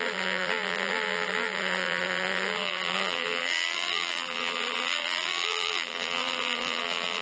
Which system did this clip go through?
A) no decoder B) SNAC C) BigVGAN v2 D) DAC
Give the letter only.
C